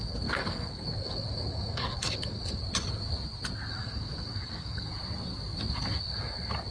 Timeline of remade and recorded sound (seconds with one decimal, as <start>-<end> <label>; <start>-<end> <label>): 0.0-2.6 remade; 2.6-3.7 recorded; 3.7-4.9 remade; 4.9-6.7 recorded